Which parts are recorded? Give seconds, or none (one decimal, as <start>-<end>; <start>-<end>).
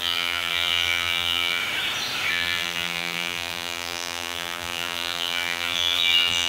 1.6-2.3